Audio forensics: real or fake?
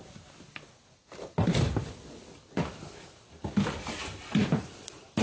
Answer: fake